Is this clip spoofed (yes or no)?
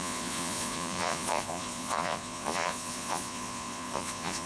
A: yes